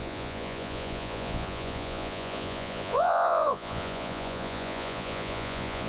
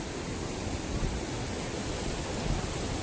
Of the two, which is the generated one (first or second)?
first